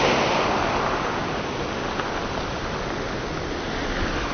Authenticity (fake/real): real